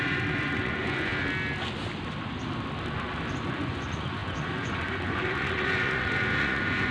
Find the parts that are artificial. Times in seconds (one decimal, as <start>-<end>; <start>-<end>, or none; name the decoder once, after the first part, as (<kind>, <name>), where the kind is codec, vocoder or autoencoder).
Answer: 0.0-1.1 (vocoder, Vocos); 3.4-6.9